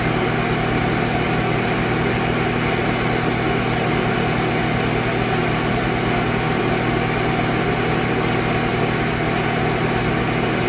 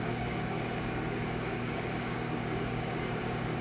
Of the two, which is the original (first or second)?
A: first